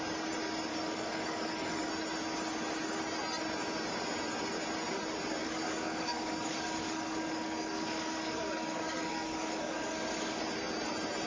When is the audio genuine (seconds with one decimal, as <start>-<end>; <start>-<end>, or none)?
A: 0.0-0.7; 1.9-5.4; 10.4-11.3